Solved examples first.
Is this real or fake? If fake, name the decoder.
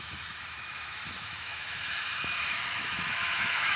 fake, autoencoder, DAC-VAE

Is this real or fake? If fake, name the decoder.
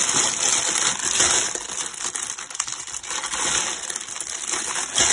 real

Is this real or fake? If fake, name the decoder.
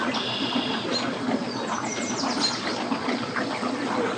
real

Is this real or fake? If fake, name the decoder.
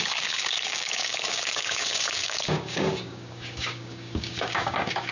fake, codec, DAC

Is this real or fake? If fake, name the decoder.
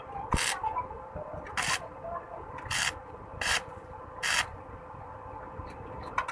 real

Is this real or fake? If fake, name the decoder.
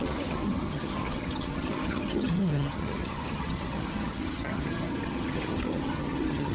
fake, vocoder, HiFi-GAN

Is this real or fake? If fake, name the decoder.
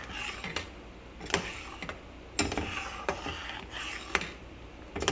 real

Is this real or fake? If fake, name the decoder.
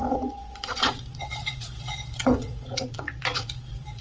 fake, vocoder, Vocos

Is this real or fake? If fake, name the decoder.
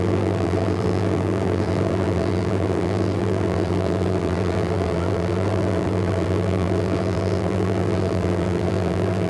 fake, vocoder, BigVGAN v2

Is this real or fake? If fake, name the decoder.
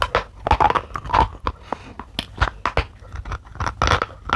real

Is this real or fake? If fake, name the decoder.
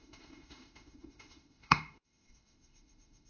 fake, autoencoder, DAC-VAE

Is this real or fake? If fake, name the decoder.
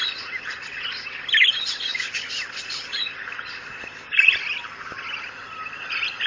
real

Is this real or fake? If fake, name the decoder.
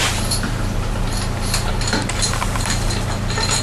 fake, vocoder, BigVGAN v2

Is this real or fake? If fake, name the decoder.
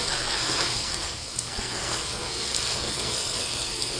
fake, codec, SNAC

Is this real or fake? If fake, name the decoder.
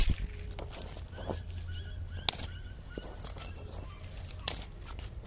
real